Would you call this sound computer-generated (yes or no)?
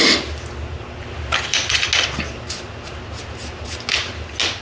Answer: no